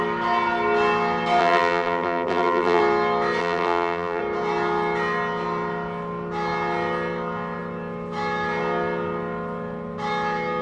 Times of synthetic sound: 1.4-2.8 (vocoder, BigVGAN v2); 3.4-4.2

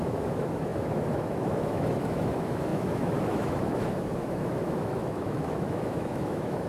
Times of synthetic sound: 0.0-6.7 (autoencoder, DAC-VAE)

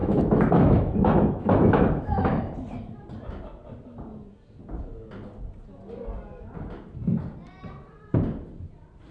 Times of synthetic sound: 0.0-2.4 (autoencoder, DAC-VAE)